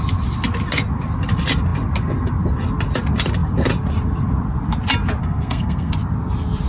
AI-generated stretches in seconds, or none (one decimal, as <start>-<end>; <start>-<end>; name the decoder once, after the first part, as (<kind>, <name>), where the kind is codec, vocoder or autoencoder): 5.2-5.9 (codec, SNAC)